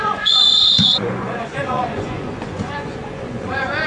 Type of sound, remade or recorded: remade